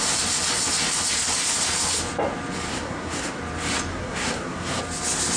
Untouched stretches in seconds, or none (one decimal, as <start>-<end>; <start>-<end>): 0.0-2.7; 3.4-3.9; 4.8-5.4